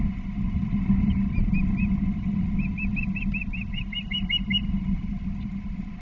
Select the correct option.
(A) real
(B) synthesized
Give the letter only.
A